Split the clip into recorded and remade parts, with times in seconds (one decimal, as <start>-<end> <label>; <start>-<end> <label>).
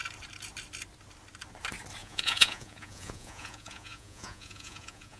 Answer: 0.0-2.0 recorded; 2.0-5.2 remade